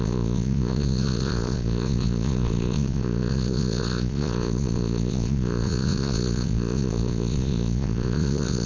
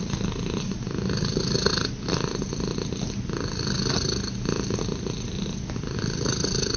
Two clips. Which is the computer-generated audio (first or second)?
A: first